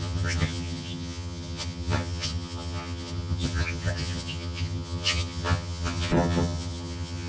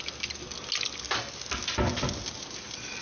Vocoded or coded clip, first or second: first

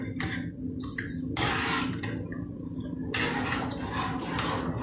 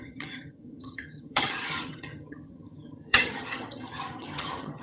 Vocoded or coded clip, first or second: second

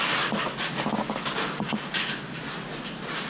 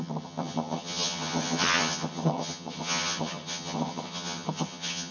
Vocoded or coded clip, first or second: second